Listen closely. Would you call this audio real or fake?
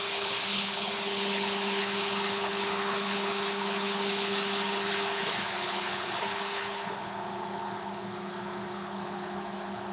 fake